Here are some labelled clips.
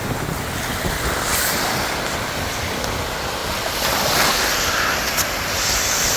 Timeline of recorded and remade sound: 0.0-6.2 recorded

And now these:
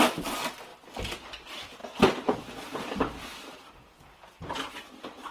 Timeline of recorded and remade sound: 0.0-0.7 recorded; 0.7-1.3 remade; 1.3-1.8 recorded; 1.8-5.3 remade

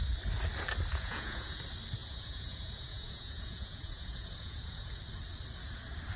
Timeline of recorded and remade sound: 0.0-0.9 recorded; 0.9-1.6 remade; 1.6-2.0 recorded; 2.0-5.0 remade; 5.0-6.2 recorded

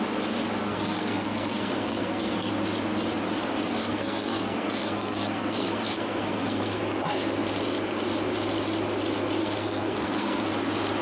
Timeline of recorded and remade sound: 0.0-0.6 recorded; 0.6-2.5 remade; 2.5-3.8 recorded; 3.8-6.8 remade; 6.8-9.4 recorded; 9.4-10.5 remade; 10.5-11.0 recorded

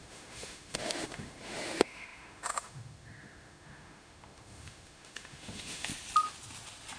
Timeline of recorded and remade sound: 0.0-5.9 remade; 5.9-7.0 recorded

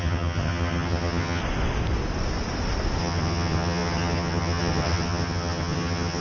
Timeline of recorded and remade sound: 0.0-1.4 remade; 1.4-3.0 recorded; 3.0-6.2 remade

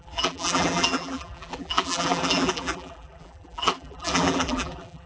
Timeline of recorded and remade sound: 0.0-5.1 remade